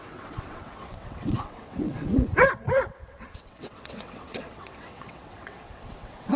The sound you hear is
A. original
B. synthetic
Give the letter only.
B